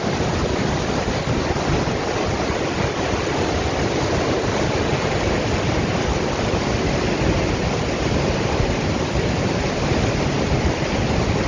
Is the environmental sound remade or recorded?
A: recorded